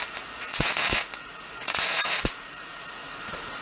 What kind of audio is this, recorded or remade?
remade